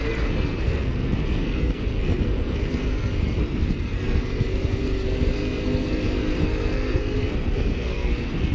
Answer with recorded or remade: remade